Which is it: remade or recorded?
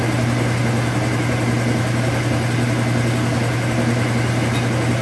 recorded